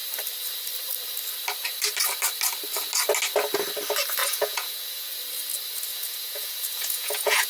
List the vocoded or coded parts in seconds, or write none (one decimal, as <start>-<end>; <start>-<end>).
4.2-5.2; 5.9-7.5

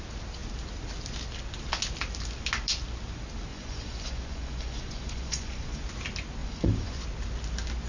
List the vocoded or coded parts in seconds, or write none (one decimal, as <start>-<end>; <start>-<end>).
3.5-5.9; 6.4-7.0

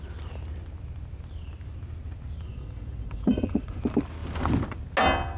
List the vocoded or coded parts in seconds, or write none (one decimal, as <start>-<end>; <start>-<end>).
2.5-3.8

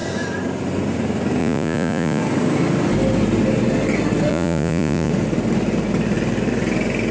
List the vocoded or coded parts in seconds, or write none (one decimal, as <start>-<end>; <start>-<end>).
1.4-2.2; 4.3-5.1

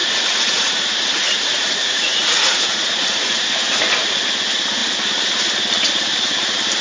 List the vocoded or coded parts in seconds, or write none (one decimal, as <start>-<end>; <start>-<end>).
0.0-3.8

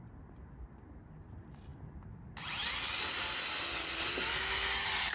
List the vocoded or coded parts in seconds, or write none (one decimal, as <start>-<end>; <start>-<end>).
none